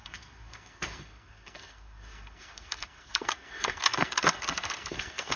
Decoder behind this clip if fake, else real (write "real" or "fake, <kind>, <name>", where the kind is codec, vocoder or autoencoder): fake, codec, SNAC